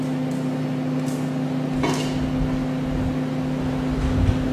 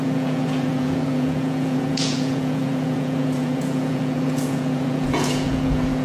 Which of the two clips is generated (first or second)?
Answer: second